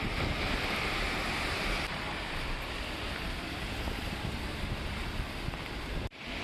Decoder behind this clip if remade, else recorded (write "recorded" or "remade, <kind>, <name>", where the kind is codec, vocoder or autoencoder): remade, vocoder, BigVGAN v2